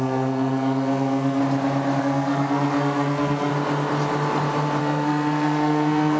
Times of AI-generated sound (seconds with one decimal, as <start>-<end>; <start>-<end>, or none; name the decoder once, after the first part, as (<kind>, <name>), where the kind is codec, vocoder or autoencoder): 0.0-1.4 (codec, SNAC); 2.0-3.5; 4.8-6.2